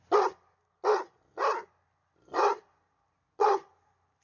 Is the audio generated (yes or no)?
no